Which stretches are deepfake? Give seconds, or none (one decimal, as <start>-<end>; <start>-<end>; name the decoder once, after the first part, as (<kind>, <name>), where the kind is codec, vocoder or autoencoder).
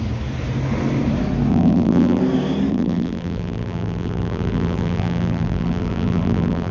1.5-2.2 (vocoder, BigVGAN v2); 2.7-6.7